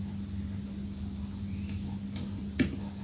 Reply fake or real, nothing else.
real